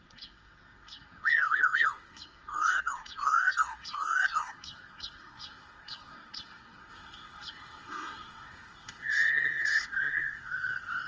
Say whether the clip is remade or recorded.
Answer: remade